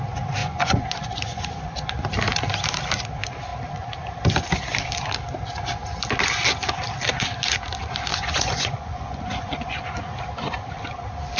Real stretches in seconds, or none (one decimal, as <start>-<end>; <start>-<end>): 0.0-0.4; 1.7-8.1; 9.8-11.4